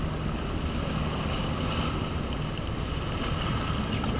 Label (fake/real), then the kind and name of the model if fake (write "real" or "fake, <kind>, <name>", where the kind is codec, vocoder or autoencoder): real